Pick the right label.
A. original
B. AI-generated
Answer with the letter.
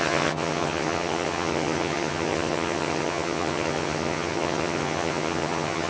B